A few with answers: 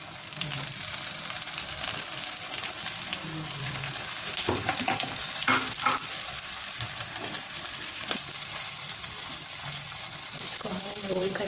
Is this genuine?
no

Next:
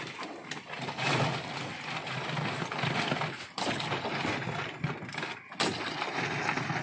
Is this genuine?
yes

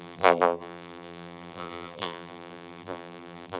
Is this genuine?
no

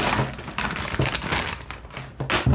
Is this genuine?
yes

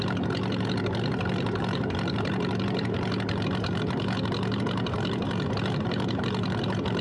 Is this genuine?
no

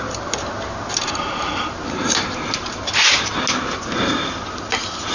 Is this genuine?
yes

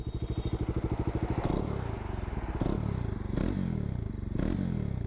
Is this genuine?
yes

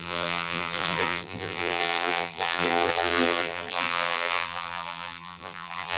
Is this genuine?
no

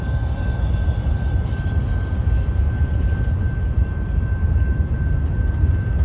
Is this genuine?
no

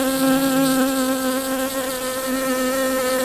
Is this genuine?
yes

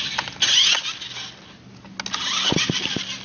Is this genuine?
yes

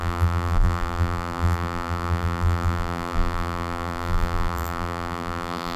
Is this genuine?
no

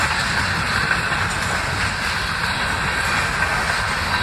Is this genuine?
yes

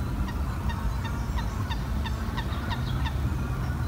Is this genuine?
yes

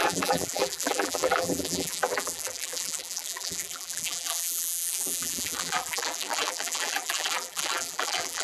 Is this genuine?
no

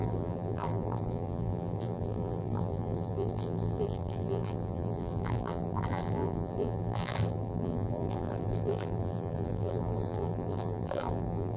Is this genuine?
no